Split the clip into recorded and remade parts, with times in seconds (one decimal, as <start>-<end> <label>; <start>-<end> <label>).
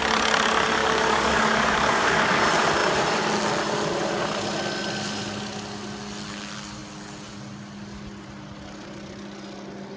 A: 0.0-0.8 recorded; 0.8-2.4 remade; 2.4-10.0 recorded